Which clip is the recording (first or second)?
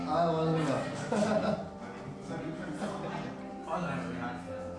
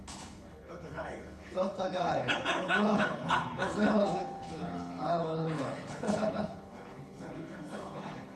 first